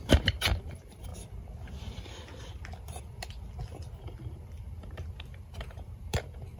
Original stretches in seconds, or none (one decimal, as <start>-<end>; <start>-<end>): 1.1-4.3